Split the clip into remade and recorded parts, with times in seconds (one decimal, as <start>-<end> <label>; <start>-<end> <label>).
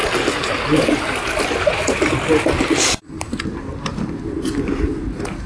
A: 0.0-0.5 remade; 0.5-1.7 recorded; 1.7-4.9 remade; 4.9-5.5 recorded